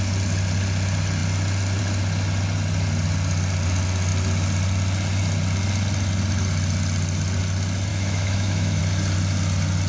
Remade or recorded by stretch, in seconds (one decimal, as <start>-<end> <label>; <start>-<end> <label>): 0.0-7.9 recorded; 7.9-8.8 remade; 8.8-9.9 recorded